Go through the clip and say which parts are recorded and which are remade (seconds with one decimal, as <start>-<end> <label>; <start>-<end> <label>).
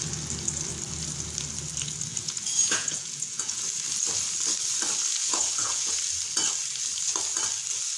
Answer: 0.0-2.1 recorded; 2.1-3.6 remade; 3.6-5.2 recorded; 5.2-6.0 remade; 6.0-8.0 recorded